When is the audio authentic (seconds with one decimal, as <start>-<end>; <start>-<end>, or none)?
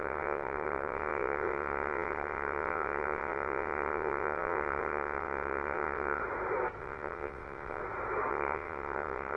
6.2-6.8; 7.8-8.3